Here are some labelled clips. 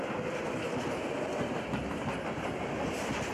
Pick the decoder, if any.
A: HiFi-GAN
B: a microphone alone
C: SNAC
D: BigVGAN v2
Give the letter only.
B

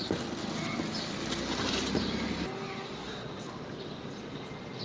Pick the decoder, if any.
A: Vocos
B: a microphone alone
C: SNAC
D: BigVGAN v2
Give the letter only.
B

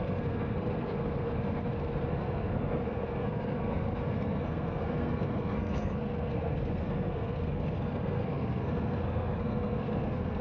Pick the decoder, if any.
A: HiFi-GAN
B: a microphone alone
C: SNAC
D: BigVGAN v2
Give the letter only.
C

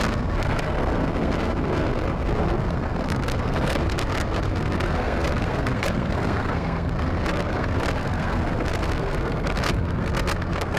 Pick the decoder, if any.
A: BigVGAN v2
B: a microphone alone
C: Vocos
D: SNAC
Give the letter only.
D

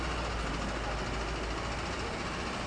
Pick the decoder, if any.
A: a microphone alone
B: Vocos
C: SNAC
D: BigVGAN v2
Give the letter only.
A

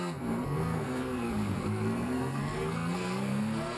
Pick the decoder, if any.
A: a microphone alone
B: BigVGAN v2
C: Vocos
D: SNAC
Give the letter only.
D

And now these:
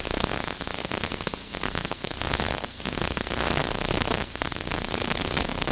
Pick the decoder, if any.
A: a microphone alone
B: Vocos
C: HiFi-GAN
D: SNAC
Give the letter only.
D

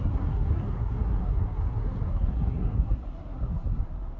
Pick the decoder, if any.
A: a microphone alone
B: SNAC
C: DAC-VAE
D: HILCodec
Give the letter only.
B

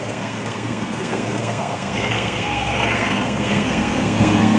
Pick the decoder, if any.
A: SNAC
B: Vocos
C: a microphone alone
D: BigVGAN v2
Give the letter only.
A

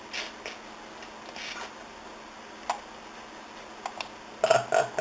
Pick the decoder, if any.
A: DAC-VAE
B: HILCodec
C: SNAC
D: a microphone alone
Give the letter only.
D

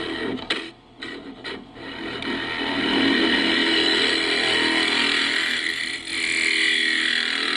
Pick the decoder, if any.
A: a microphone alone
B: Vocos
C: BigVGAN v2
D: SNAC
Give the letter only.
A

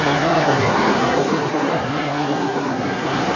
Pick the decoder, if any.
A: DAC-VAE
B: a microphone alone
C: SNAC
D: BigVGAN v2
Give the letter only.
C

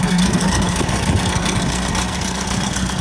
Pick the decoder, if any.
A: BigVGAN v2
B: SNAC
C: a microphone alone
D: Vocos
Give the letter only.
B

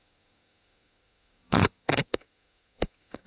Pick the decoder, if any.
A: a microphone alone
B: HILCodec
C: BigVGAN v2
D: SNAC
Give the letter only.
D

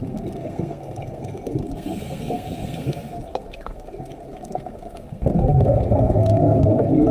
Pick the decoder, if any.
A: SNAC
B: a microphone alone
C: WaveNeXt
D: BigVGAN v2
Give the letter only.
A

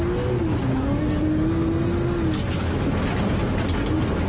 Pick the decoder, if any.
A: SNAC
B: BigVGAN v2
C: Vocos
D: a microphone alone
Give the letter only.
D